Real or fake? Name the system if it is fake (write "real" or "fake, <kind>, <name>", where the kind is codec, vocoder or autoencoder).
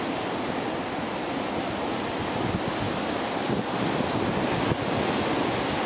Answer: real